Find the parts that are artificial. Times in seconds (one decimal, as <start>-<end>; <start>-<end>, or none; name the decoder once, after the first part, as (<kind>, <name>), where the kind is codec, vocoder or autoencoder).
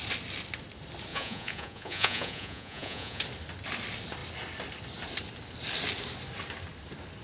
1.1-3.2 (vocoder, Vocos)